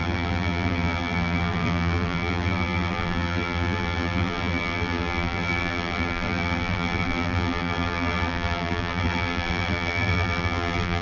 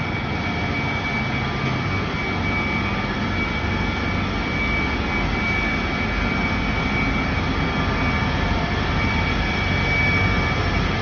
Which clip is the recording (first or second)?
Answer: second